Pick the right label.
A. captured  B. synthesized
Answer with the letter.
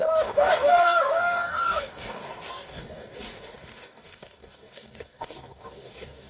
B